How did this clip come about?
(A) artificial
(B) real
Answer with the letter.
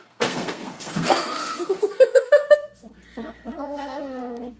A